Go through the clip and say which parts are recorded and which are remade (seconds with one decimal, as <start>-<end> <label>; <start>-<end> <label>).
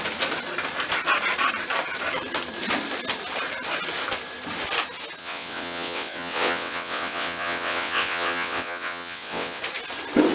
0.0-5.2 recorded; 5.2-9.6 remade; 9.6-10.3 recorded